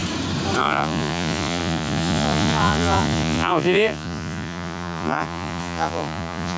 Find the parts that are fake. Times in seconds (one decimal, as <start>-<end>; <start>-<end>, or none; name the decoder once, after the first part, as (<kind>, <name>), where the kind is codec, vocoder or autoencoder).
0.6-6.6 (vocoder, Vocos)